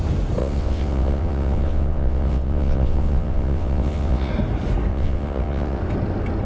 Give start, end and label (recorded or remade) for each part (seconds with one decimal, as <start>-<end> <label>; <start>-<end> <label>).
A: 0.0-0.4 recorded; 0.4-4.3 remade; 4.3-4.9 recorded; 4.9-5.8 remade; 5.8-6.5 recorded